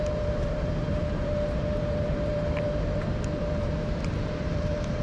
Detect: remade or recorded remade